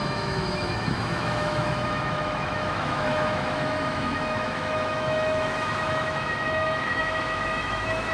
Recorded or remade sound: remade